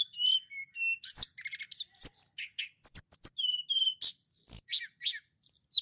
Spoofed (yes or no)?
no